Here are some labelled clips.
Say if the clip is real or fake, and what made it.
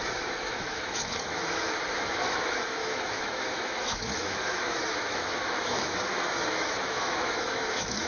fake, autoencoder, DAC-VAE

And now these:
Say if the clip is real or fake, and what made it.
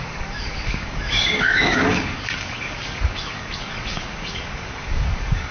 fake, codec, DAC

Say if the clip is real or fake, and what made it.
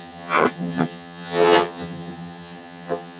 fake, vocoder, HiFi-GAN